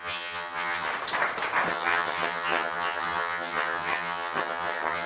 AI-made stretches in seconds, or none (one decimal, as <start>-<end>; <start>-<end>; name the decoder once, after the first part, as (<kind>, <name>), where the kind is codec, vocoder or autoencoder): 0.0-0.9 (vocoder, HiFi-GAN); 1.7-5.1